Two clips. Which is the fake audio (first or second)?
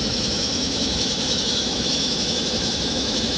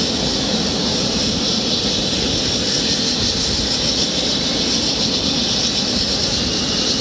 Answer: first